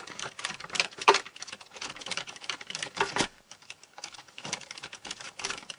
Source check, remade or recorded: remade